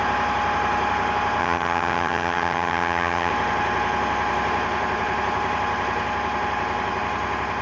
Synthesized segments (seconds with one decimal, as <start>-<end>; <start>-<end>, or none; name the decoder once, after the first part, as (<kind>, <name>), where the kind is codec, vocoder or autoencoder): 1.4-3.3 (vocoder, HiFi-GAN)